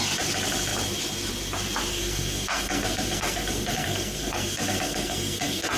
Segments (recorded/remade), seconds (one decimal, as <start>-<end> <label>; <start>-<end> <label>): 0.0-1.9 recorded; 1.9-5.8 remade